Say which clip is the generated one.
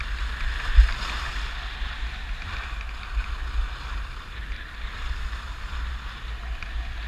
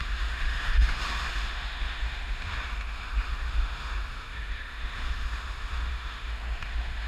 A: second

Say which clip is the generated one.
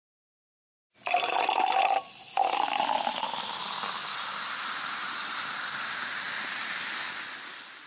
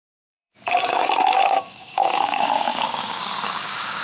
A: second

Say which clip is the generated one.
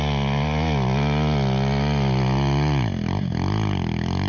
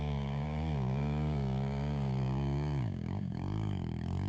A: second